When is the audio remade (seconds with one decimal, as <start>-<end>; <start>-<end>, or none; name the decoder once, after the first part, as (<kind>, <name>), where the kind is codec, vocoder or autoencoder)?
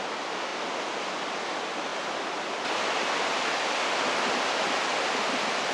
none